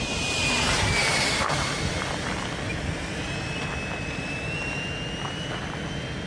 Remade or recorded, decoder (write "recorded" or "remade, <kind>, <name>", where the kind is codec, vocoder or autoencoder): recorded